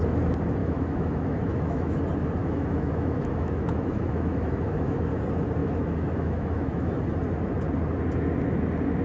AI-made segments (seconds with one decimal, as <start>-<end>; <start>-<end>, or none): 0.6-2.0; 2.4-5.1; 5.6-6.9